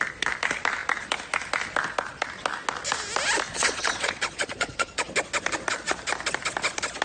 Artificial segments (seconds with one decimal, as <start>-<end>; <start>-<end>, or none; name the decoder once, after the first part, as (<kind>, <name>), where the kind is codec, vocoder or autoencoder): 3.5-5.1 (vocoder, Vocos)